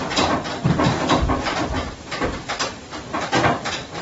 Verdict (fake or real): real